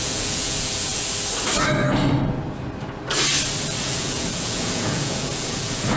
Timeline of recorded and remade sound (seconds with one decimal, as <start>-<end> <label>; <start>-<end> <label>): 0.0-1.0 remade; 1.0-3.8 recorded; 3.8-6.0 remade